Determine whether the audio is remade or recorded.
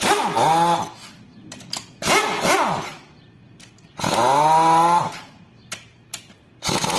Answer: recorded